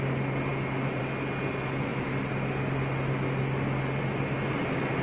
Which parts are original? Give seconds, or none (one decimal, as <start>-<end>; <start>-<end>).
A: 0.0-5.0